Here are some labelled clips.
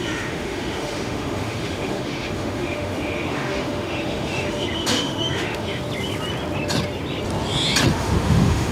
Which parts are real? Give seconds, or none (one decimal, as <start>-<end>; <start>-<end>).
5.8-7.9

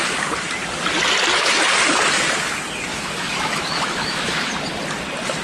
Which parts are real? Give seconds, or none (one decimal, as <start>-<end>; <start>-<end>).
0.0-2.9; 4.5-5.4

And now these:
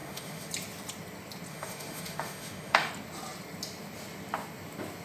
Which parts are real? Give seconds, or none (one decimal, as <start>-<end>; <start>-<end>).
0.5-1.5; 2.9-5.0

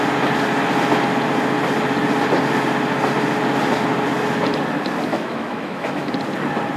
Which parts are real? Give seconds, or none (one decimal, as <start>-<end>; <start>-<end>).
0.0-5.1; 6.1-6.8

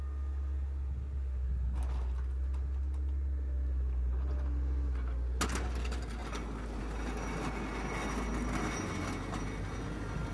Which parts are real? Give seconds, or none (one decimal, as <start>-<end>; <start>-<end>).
0.0-10.3

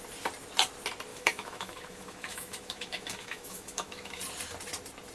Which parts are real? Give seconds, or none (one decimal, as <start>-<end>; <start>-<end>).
0.0-1.1; 4.2-5.1

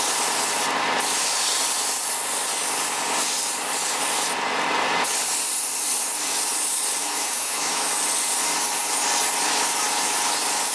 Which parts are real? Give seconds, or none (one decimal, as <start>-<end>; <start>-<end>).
0.0-7.0; 7.9-10.7

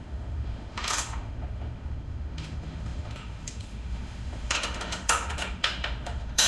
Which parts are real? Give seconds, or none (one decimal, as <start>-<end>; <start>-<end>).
none